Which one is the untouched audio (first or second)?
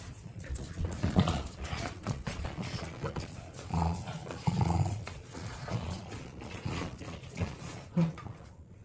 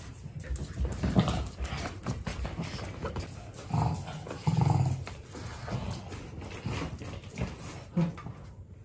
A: second